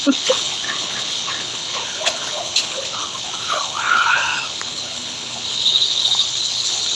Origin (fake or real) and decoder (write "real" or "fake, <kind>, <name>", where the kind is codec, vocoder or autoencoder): fake, codec, HILCodec